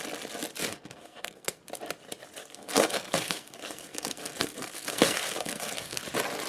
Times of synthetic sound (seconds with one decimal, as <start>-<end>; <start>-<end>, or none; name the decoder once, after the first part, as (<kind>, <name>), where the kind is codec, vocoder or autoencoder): 0.7-1.6 (codec, SNAC); 2.4-6.0